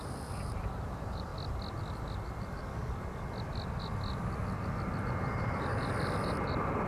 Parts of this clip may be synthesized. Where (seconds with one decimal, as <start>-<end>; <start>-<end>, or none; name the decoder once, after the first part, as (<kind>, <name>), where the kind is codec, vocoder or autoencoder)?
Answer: 0.0-1.3 (vocoder, BigVGAN v2); 5.0-6.9